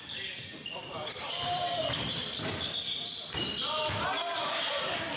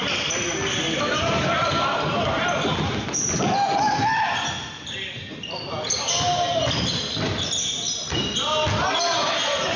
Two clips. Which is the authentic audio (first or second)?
second